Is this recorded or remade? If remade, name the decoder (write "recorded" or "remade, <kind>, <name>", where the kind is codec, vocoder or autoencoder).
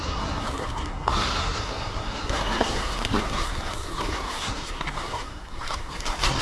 remade, codec, SNAC